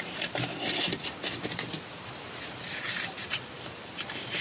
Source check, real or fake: fake